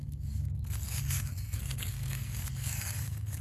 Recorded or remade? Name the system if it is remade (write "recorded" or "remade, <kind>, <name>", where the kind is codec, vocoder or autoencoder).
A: remade, codec, SNAC